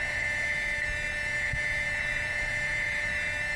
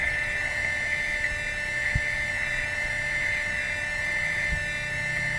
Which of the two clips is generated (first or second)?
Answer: first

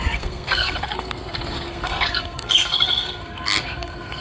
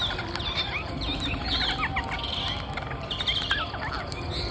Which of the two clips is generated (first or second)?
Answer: first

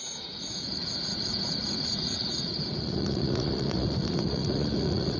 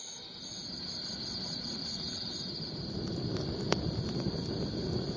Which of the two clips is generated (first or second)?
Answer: first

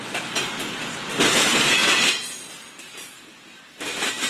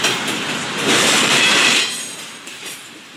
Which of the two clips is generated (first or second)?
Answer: second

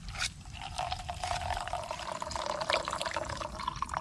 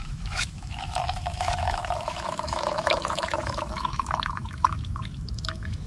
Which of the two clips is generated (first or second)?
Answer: second